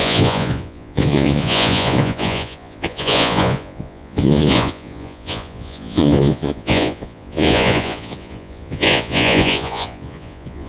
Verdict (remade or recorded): remade